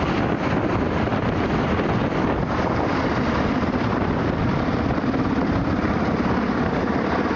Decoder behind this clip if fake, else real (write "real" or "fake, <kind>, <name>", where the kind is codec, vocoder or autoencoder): real